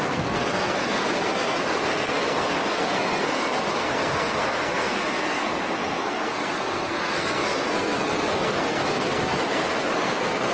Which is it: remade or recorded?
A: remade